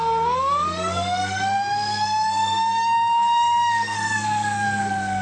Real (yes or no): no